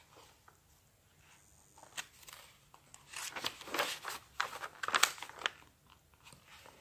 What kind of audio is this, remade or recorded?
recorded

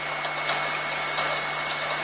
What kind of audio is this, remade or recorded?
recorded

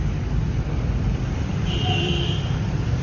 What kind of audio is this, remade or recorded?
remade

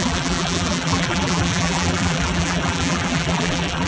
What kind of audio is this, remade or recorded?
remade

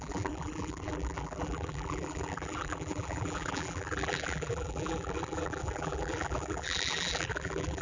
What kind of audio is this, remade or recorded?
remade